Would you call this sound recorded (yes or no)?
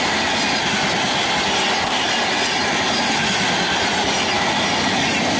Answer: yes